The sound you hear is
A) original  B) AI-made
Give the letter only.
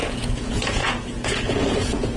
B